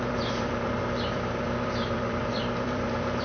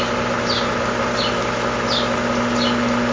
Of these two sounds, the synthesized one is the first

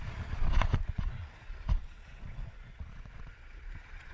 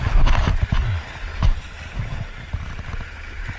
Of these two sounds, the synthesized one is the first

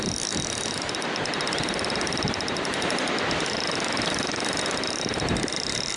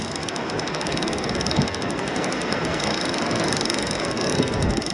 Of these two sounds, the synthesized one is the second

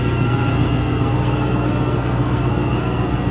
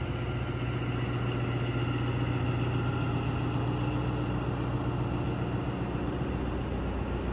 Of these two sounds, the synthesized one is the first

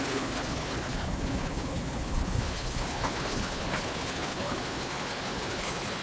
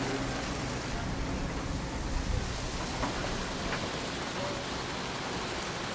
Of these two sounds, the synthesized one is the first